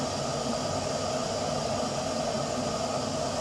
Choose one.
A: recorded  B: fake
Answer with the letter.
A